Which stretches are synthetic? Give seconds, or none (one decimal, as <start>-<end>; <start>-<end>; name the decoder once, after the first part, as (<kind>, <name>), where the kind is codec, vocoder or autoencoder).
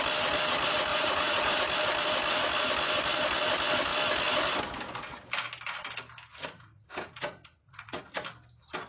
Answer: 0.9-1.6 (vocoder, Vocos); 6.4-8.0